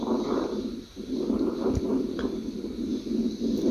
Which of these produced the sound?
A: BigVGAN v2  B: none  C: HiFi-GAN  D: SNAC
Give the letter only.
B